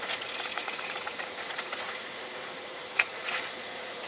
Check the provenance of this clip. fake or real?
fake